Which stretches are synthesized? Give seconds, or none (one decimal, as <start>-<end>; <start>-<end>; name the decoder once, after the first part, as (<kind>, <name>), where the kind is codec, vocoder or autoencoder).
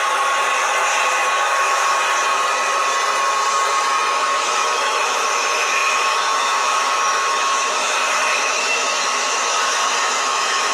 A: 1.4-1.9 (autoencoder, DAC-VAE); 4.1-10.7